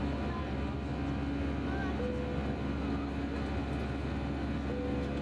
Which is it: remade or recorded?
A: recorded